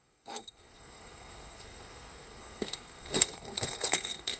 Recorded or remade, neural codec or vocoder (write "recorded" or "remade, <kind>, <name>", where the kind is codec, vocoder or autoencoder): remade, codec, SNAC